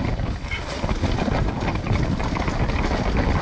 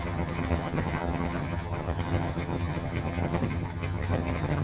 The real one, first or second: first